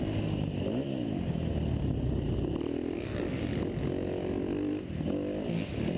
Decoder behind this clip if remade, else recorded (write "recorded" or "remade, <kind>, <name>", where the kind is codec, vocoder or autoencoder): recorded